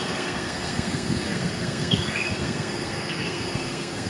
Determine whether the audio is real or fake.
fake